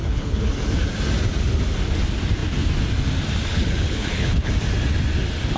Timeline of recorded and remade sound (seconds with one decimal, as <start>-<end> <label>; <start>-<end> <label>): 0.0-0.5 remade; 0.5-3.5 recorded; 3.5-4.5 remade; 4.5-5.6 recorded